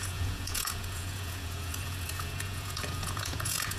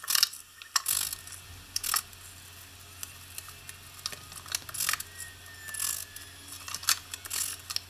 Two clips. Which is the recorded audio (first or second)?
second